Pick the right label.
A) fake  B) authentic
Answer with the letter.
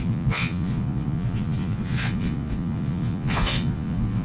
A